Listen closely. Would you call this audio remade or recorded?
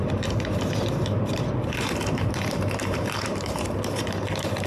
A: remade